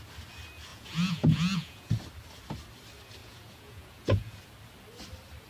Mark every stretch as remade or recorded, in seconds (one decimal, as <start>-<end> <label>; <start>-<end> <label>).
0.0-0.7 recorded; 0.7-1.9 remade; 1.9-3.2 recorded; 3.2-4.4 remade; 4.4-5.5 recorded